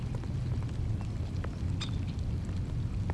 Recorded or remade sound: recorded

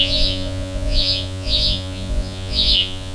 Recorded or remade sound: remade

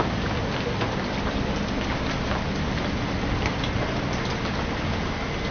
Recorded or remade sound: recorded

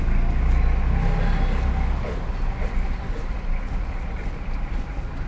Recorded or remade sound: recorded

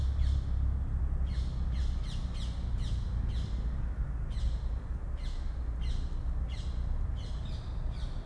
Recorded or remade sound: recorded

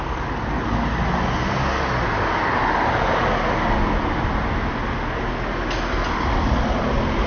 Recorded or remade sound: recorded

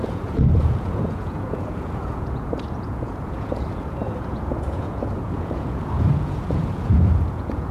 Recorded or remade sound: remade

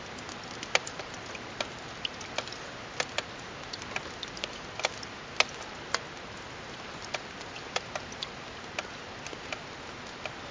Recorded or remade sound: recorded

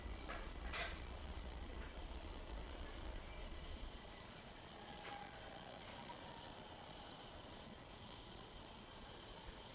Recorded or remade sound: remade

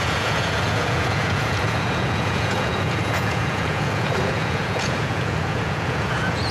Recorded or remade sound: remade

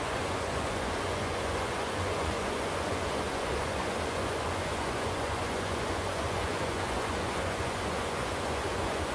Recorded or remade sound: remade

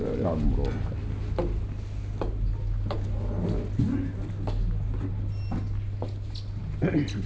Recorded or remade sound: recorded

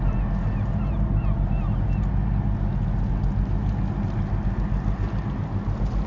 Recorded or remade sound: recorded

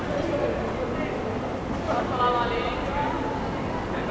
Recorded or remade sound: recorded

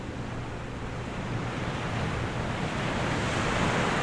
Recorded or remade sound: recorded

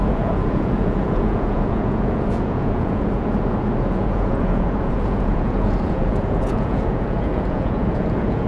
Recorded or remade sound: remade